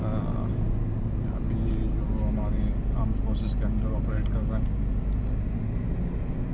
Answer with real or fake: real